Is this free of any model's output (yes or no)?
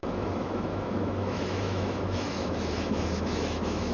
no